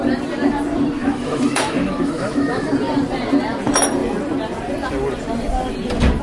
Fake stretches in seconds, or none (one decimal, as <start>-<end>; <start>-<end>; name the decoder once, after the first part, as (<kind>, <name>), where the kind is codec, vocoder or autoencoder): 1.0-2.7 (autoencoder, DAC-VAE)